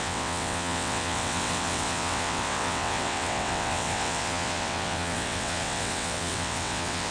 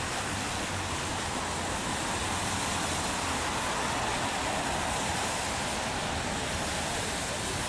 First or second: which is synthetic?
first